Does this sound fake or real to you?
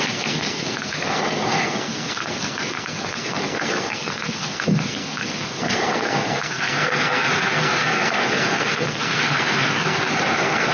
fake